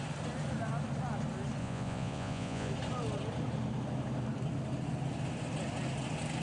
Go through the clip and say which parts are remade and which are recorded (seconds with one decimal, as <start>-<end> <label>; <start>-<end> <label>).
0.0-1.6 recorded; 1.6-2.7 remade; 2.7-6.4 recorded